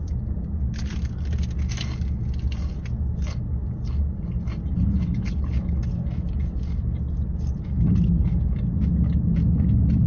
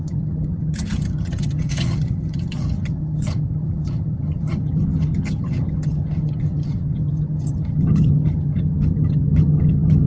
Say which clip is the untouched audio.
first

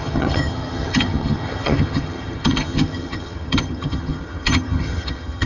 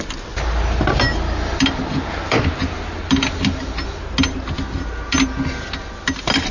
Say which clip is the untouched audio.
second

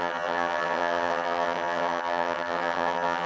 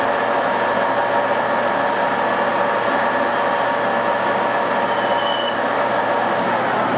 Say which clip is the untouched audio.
second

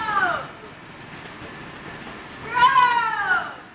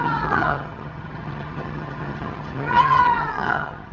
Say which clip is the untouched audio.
first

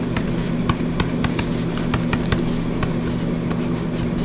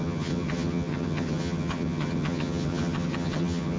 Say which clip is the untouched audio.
first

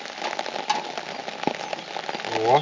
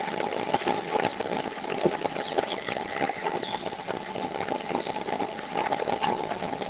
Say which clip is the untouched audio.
first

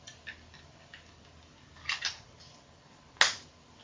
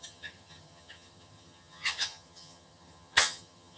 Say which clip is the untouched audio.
first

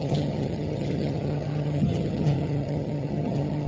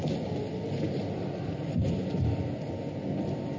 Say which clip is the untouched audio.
second